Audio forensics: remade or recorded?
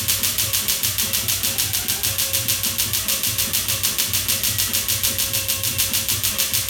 recorded